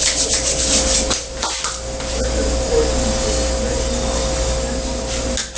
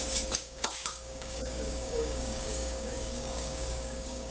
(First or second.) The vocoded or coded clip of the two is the second